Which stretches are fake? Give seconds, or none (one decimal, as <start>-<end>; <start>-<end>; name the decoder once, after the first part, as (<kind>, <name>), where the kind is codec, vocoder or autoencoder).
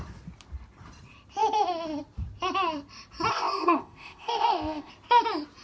3.3-4.9 (codec, ZipCodec)